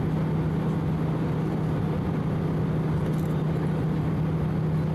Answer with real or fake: real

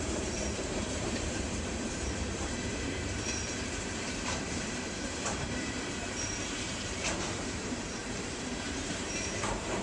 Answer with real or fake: fake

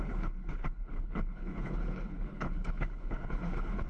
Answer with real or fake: fake